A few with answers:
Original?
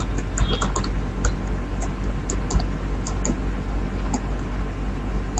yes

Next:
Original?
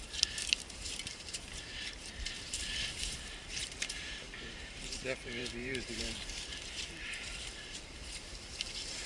no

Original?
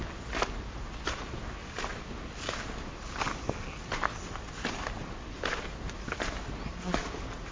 yes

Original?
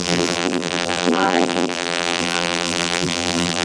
no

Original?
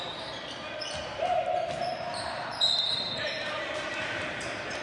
no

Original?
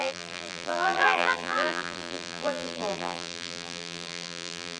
no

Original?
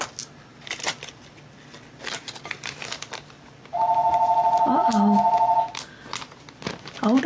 yes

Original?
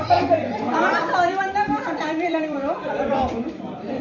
no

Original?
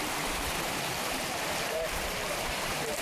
no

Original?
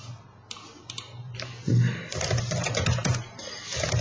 no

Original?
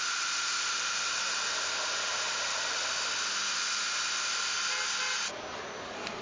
yes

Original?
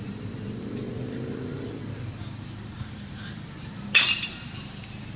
no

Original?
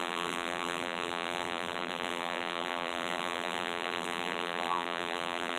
no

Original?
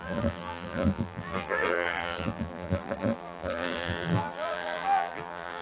no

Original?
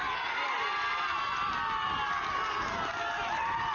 yes